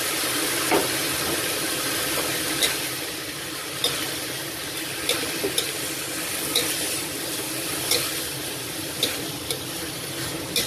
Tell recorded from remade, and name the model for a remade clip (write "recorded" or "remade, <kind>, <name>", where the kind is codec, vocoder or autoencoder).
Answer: recorded